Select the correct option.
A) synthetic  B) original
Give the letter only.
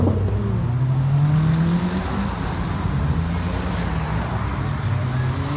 B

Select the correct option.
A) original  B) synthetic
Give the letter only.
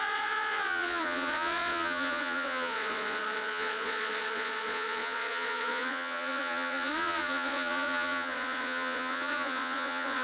B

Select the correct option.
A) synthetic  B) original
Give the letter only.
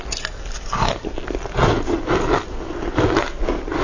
B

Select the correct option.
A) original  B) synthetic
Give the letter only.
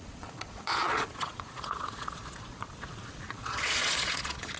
B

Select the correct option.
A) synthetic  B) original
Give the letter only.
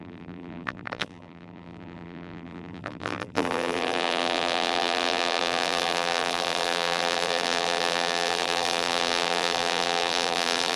A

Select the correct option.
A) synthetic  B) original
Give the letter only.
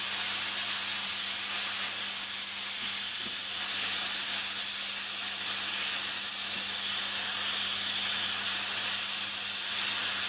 B